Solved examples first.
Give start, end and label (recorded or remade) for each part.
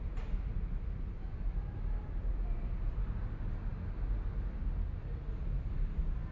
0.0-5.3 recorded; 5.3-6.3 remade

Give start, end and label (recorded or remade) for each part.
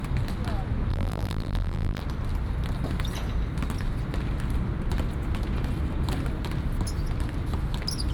0.0-0.9 recorded; 0.9-2.0 remade; 2.0-8.1 recorded